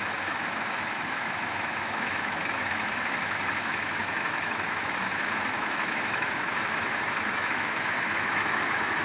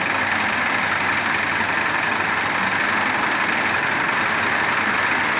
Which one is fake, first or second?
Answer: first